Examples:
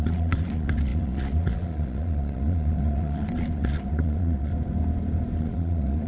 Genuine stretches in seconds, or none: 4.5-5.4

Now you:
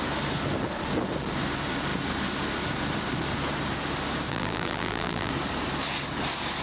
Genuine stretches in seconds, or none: 0.0-4.3; 5.3-6.6